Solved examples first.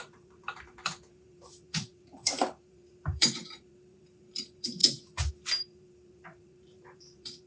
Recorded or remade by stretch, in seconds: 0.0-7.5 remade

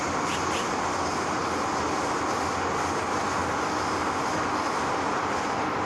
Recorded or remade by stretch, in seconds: 0.0-5.9 recorded

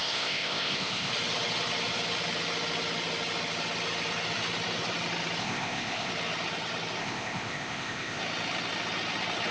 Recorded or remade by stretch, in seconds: 0.0-1.1 remade; 1.1-5.4 recorded; 5.4-6.1 remade; 6.1-7.0 recorded; 7.0-8.2 remade; 8.2-9.5 recorded

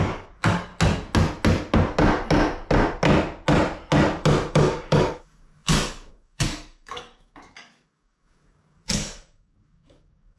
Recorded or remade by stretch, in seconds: 0.0-0.7 remade; 0.7-4.5 recorded; 4.5-10.4 remade

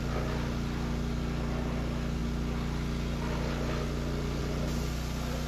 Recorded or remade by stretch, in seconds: 0.0-5.5 recorded

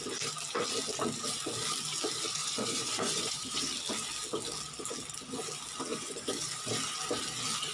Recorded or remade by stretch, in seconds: 0.0-2.4 recorded; 2.4-3.6 remade; 3.6-5.9 recorded; 5.9-6.7 remade; 6.7-7.7 recorded

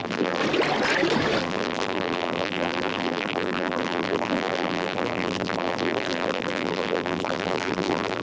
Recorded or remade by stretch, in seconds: 0.0-0.4 remade; 0.4-1.4 recorded; 1.4-8.2 remade

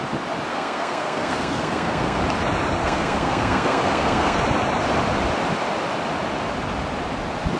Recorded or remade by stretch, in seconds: 0.0-0.5 recorded; 0.5-2.2 remade; 2.2-2.8 recorded; 2.8-4.4 remade; 4.4-7.6 recorded